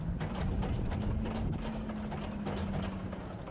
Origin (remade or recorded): recorded